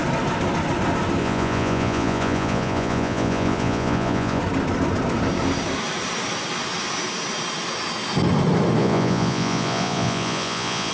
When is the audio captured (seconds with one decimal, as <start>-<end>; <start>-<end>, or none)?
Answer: 0.0-1.2; 4.4-8.8